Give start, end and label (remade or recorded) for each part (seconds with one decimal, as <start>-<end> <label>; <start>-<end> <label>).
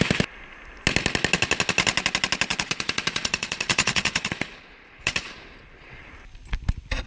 0.0-2.5 recorded; 2.5-6.1 remade; 6.1-7.1 recorded